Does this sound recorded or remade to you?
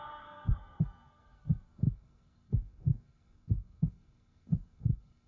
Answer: remade